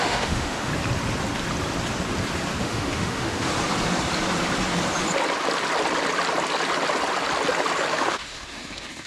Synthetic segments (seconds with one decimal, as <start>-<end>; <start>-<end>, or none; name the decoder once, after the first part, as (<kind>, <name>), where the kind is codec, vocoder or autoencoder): 0.0-0.7 (autoencoder, DAC-VAE); 2.6-3.5; 7.9-9.1